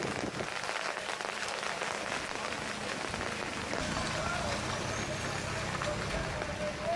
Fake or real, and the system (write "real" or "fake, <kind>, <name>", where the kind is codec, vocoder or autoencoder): real